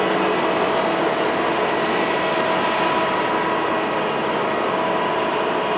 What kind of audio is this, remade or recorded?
recorded